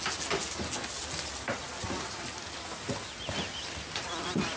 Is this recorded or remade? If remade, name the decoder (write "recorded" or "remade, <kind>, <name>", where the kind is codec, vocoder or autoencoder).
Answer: recorded